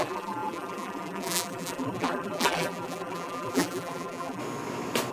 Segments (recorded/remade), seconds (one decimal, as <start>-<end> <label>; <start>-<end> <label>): 0.0-4.4 remade; 4.4-5.1 recorded